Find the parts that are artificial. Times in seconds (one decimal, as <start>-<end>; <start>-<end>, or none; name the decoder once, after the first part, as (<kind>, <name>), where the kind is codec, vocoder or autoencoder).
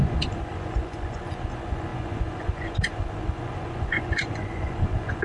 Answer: 0.0-5.2 (vocoder, Vocos)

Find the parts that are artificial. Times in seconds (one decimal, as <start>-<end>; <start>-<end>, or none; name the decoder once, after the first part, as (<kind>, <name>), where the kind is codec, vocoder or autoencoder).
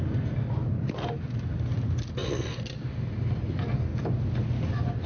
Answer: none